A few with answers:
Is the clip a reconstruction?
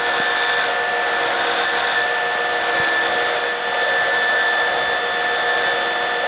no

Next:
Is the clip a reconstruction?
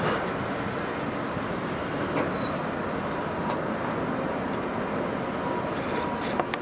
no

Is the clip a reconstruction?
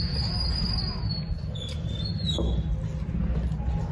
no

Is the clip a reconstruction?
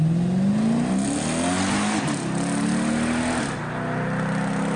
no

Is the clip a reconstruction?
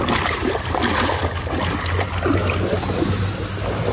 no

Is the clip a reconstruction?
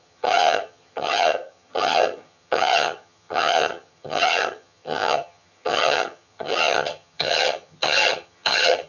yes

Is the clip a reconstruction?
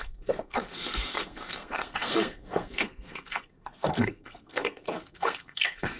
yes